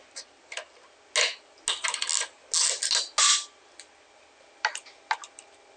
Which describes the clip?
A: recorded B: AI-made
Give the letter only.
A